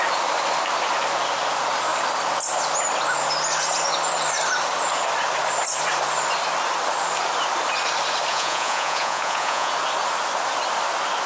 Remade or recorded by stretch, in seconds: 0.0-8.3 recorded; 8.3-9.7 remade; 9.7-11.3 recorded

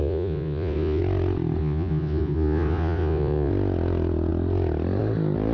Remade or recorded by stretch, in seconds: 0.0-1.0 remade; 1.0-1.6 recorded; 1.6-3.5 remade; 3.5-5.5 recorded

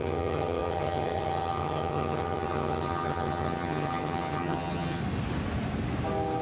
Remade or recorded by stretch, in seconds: 0.0-5.0 remade; 5.0-6.4 recorded

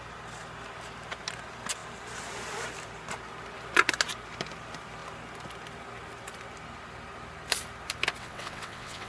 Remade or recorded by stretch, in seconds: 0.0-8.2 recorded; 8.2-9.1 remade

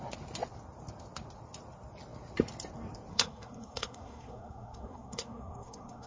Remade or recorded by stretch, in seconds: 0.0-3.1 recorded; 3.1-6.1 remade

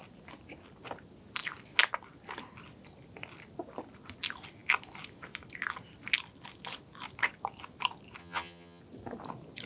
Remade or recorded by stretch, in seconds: 0.0-8.2 recorded; 8.2-8.8 remade; 8.8-9.7 recorded

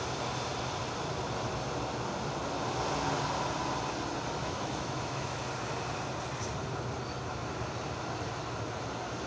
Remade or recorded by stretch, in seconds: 0.0-4.4 recorded; 4.4-5.4 remade; 5.4-9.3 recorded